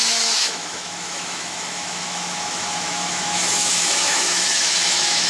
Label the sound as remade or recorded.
remade